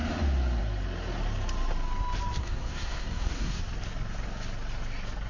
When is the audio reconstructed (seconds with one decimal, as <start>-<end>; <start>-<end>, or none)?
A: 2.4-3.6